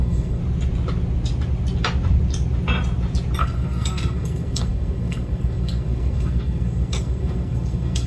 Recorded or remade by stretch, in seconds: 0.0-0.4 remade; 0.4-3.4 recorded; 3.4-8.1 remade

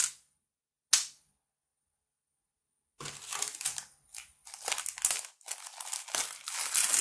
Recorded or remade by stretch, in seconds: 0.0-7.0 recorded

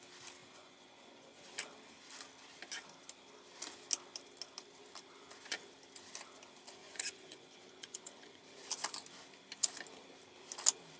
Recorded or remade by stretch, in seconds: 0.0-0.4 recorded; 0.4-1.4 remade; 1.4-6.8 recorded; 6.8-8.4 remade; 8.4-11.0 recorded

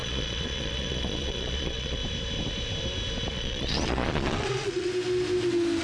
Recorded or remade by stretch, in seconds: 0.0-2.0 remade; 2.0-3.3 recorded; 3.3-4.9 remade; 4.9-5.8 recorded